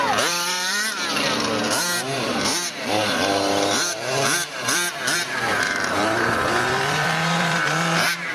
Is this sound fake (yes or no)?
yes